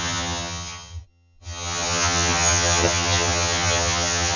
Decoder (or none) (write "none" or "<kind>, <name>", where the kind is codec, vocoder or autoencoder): vocoder, HiFi-GAN